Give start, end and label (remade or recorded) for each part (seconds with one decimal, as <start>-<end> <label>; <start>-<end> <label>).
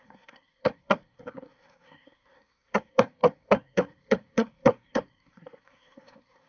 0.0-6.5 remade